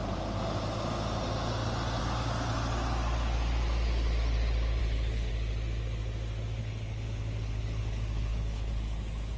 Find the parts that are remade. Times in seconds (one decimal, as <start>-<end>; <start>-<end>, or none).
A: 4.8-5.3; 6.6-9.4